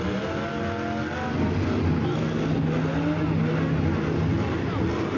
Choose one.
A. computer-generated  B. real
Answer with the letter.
B